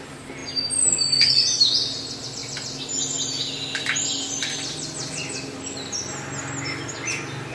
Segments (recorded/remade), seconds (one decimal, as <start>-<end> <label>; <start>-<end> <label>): 0.0-7.5 recorded